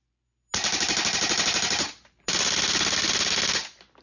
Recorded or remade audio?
recorded